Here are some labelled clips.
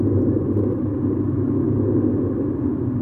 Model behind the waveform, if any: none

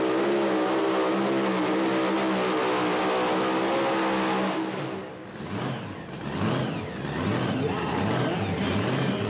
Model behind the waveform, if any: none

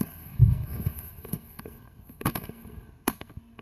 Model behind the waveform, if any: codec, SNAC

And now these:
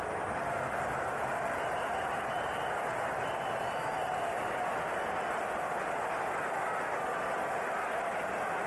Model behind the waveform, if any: none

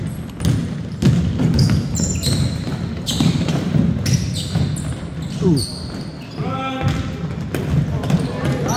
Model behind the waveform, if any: none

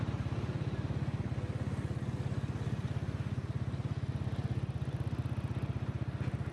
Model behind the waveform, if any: none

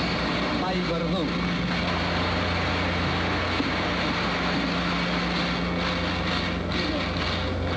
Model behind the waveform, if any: none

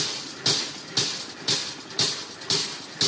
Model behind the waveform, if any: none